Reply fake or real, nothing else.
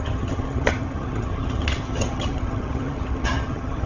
fake